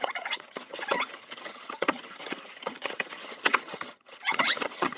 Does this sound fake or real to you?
fake